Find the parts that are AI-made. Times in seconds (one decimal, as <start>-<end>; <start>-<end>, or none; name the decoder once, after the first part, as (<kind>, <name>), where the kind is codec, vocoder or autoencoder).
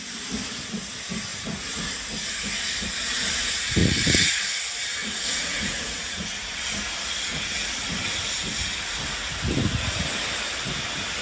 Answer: 1.3-1.9 (vocoder, Vocos); 3.8-4.4; 5.0-6.3